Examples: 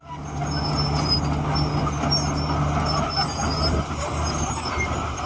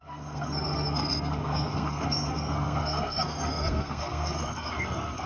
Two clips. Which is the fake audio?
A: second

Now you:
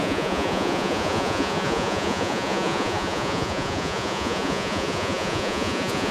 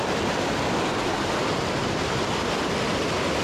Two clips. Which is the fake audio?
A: first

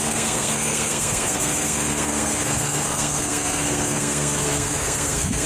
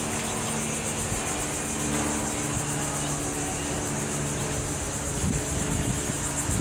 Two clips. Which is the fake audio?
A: first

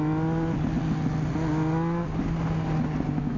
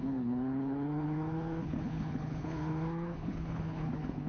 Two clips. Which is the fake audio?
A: second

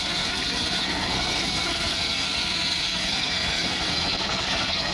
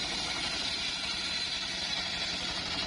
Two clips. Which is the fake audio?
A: first